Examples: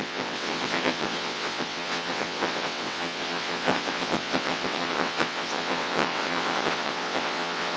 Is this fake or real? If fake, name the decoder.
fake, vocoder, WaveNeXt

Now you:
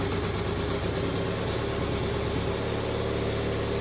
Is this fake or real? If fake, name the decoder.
real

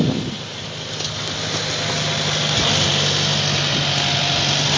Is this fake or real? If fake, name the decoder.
real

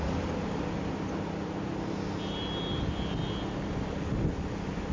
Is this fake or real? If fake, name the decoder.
real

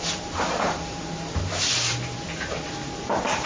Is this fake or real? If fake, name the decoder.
real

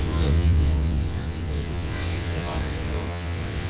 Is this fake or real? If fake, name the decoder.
fake, vocoder, WaveNeXt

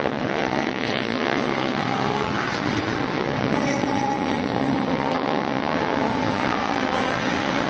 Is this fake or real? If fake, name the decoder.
fake, vocoder, WaveNeXt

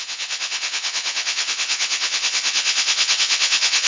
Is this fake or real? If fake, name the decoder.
fake, vocoder, WaveNeXt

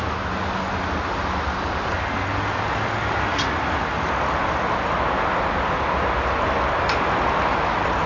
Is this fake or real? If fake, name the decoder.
real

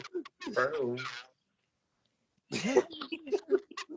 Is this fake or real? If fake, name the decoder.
real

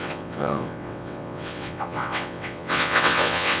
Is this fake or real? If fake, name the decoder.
fake, vocoder, WaveNeXt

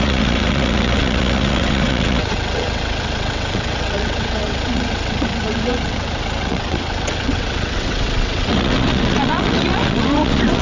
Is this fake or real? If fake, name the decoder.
fake, vocoder, WaveNeXt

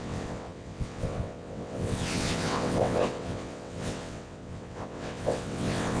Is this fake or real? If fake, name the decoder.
fake, vocoder, WaveNeXt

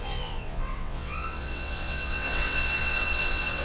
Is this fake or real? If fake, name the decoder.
fake, vocoder, WaveNeXt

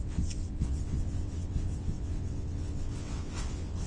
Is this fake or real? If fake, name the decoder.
fake, vocoder, WaveNeXt